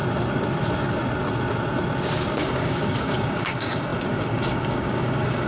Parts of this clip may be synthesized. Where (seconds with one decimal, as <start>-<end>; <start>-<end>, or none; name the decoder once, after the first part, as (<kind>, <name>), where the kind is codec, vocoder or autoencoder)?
2.4-5.5 (codec, DAC)